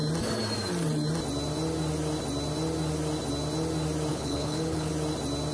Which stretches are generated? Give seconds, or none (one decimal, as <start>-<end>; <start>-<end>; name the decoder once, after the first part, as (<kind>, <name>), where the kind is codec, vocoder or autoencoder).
4.1-4.9 (codec, HILCodec)